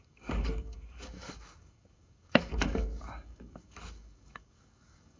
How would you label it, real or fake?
fake